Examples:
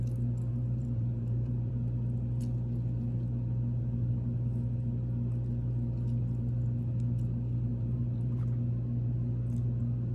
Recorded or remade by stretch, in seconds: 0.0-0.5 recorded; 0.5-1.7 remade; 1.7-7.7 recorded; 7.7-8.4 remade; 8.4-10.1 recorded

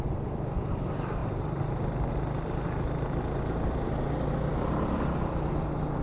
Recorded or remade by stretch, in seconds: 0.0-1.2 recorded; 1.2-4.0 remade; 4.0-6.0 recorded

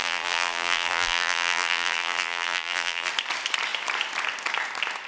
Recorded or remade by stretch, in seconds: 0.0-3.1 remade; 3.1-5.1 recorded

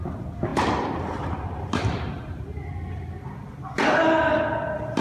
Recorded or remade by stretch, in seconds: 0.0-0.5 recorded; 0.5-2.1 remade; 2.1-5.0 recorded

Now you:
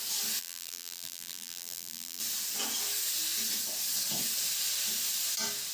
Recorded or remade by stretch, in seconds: 0.0-0.4 recorded; 0.4-2.2 remade; 2.2-5.7 recorded

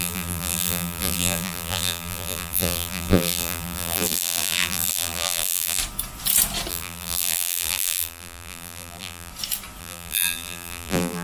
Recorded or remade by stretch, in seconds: 0.0-5.8 remade; 5.8-6.7 recorded; 6.7-9.3 remade; 9.3-9.8 recorded; 9.8-11.2 remade

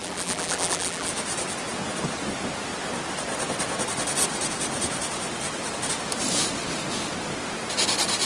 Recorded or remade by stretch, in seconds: 0.0-1.1 remade; 1.1-8.3 recorded

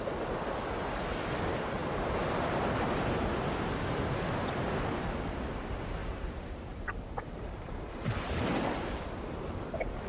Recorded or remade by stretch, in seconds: 0.0-6.0 recorded; 6.0-7.0 remade; 7.0-10.1 recorded